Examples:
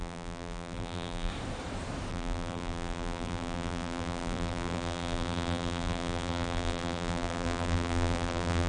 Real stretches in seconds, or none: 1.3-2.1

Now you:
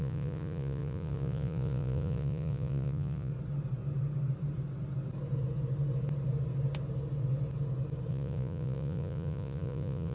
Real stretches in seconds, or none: 3.3-8.1

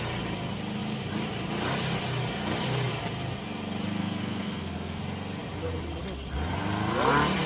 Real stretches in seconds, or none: 0.0-4.0; 5.0-7.5

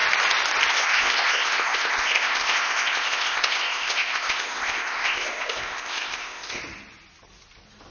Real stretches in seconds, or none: 0.0-0.7; 6.6-7.9

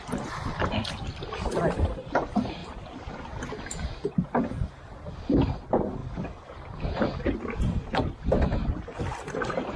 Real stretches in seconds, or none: 0.0-9.8

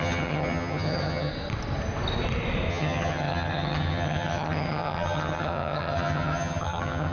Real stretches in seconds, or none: 1.3-2.7

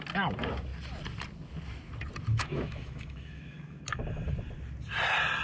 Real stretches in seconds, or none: 0.0-2.3; 3.8-5.4

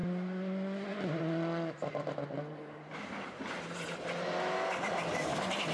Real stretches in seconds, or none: 0.0-5.7